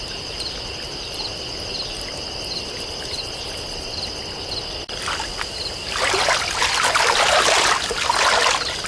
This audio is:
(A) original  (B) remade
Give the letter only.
A